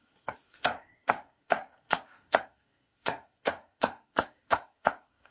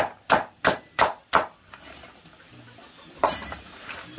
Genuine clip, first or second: second